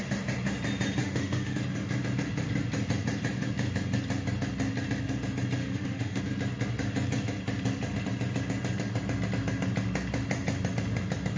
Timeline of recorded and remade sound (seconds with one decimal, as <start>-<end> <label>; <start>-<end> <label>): 0.0-1.0 recorded; 1.0-1.6 remade; 1.6-5.6 recorded; 5.6-6.2 remade; 6.2-11.4 recorded